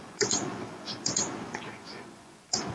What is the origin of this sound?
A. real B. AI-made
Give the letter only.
B